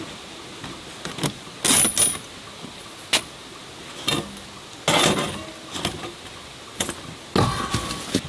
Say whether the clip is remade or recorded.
recorded